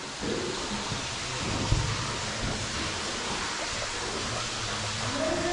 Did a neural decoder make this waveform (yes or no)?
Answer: no